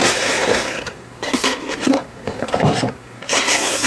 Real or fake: fake